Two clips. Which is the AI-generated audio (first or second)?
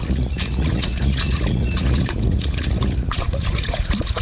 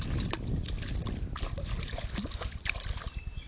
first